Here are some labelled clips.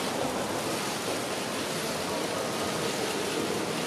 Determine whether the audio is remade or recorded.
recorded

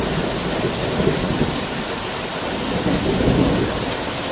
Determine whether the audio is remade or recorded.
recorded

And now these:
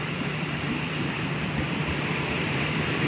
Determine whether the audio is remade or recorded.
remade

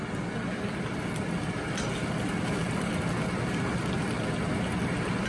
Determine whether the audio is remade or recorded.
recorded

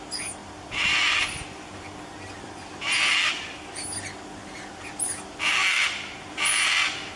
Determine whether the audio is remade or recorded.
recorded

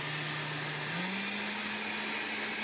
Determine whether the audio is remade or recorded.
recorded